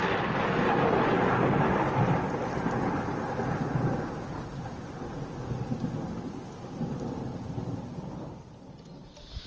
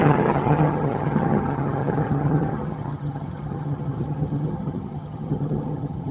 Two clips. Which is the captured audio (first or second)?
first